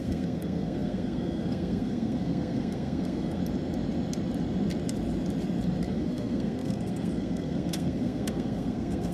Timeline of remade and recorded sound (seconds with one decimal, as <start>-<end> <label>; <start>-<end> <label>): 0.0-3.4 remade; 3.4-5.9 recorded; 5.9-9.1 remade